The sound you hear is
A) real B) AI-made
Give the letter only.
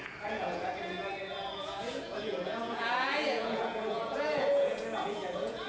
B